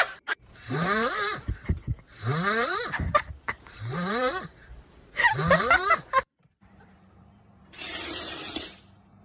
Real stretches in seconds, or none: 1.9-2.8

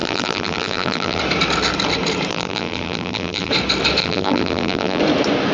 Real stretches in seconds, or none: 1.2-2.3; 3.5-4.0; 5.0-5.5

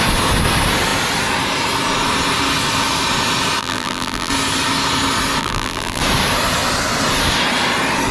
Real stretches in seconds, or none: 0.0-3.6; 4.3-5.4; 6.0-8.1

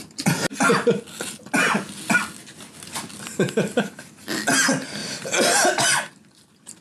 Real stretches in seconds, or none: 0.0-3.3; 4.2-5.0; 5.7-6.8